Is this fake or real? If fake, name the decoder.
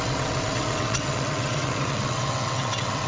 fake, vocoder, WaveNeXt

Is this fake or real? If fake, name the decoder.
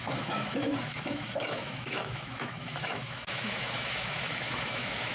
fake, autoencoder, DAC-VAE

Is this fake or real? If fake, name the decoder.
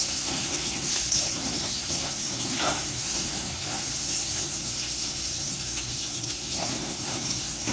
fake, codec, SNAC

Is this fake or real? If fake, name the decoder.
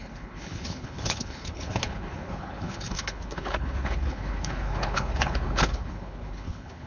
fake, codec, HILCodec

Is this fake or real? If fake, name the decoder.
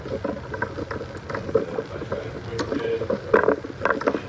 real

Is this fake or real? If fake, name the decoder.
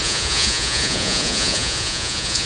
fake, vocoder, Vocos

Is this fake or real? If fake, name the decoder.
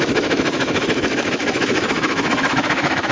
fake, autoencoder, DAC-VAE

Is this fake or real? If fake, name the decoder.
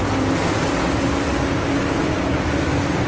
real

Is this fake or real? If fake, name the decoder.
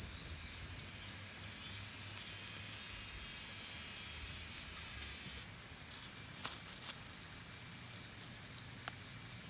real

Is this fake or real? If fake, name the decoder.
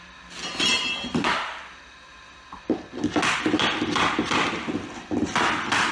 real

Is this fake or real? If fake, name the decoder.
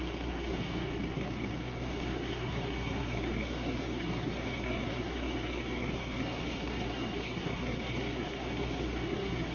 fake, codec, SNAC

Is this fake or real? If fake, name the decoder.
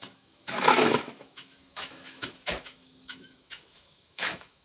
fake, autoencoder, DAC-VAE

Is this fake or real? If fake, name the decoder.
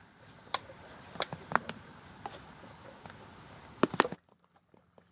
real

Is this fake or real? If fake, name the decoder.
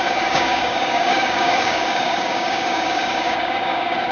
fake, codec, DAC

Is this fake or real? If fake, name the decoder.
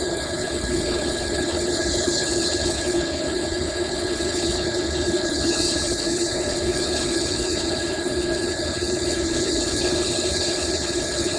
fake, codec, HILCodec